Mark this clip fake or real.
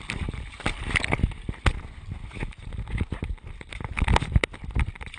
real